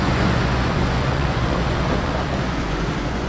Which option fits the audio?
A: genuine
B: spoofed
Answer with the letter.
B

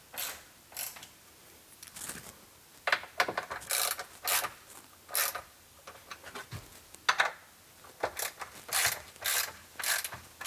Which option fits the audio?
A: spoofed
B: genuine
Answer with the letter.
B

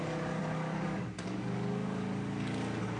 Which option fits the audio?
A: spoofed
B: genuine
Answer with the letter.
A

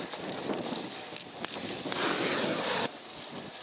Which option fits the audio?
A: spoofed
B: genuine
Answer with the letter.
B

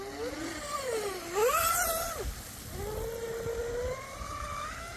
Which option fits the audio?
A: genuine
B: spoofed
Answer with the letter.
A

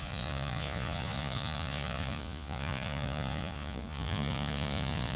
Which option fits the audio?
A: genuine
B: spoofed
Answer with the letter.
B